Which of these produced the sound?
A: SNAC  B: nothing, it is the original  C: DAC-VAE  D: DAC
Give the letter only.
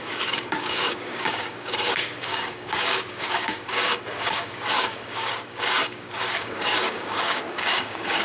D